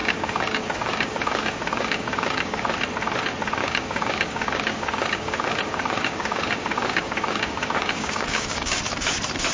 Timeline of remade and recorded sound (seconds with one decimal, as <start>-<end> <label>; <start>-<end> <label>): 0.0-2.7 remade; 2.7-3.6 recorded; 3.6-8.8 remade; 8.8-9.5 recorded